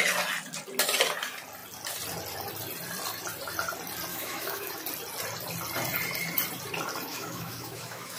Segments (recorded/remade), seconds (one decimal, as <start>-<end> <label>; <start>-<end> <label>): 0.0-4.1 recorded; 4.1-4.7 remade; 4.7-7.1 recorded; 7.1-8.2 remade